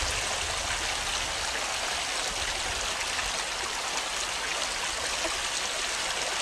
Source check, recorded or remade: recorded